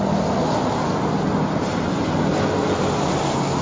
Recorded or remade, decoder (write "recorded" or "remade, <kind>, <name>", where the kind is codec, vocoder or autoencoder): recorded